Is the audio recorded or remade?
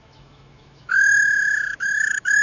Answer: remade